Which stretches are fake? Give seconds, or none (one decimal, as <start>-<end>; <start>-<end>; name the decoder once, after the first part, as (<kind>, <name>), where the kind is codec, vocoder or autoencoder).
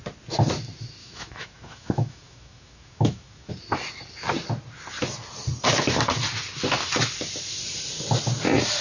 1.0-3.5 (autoencoder, DAC-VAE)